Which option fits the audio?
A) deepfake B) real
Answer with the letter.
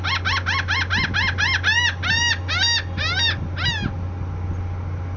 B